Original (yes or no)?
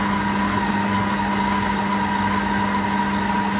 yes